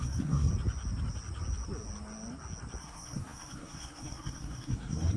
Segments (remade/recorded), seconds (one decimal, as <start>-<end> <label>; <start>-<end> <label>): 0.0-0.5 remade; 0.5-2.8 recorded; 2.8-5.2 remade